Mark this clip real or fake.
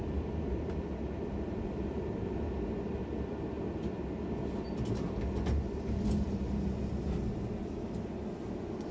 real